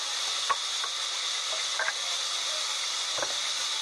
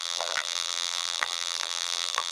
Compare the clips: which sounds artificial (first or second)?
second